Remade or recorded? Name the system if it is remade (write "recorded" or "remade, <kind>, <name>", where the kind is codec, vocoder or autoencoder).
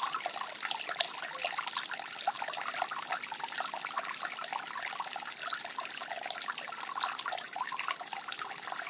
recorded